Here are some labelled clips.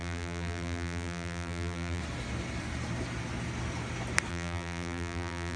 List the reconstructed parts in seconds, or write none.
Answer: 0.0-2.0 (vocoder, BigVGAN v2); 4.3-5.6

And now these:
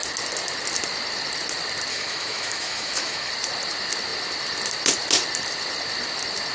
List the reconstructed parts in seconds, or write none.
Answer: 1.9-3.3 (autoencoder, DAC-VAE)

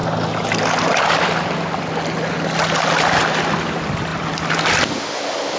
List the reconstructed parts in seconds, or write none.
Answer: none

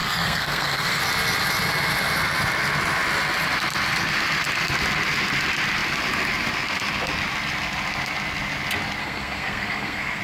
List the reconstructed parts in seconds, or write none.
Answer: 0.0-1.0 (codec, SNAC); 9.0-10.2